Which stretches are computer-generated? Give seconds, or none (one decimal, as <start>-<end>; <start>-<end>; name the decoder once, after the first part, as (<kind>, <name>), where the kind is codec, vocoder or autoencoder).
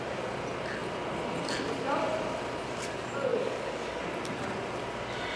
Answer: 3.3-4.0 (codec, DAC)